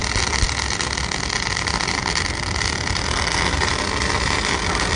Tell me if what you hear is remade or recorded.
recorded